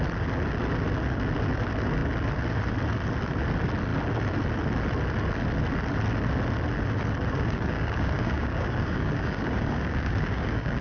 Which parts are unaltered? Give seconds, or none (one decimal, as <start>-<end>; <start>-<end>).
0.0-7.3